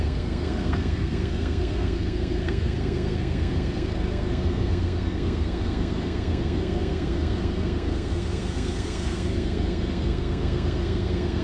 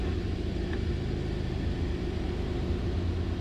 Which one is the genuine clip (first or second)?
second